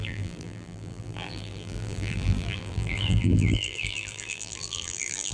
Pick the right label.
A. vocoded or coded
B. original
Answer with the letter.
A